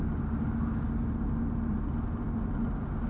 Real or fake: real